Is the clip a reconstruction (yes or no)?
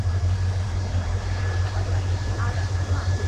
yes